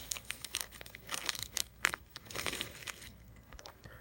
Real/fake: fake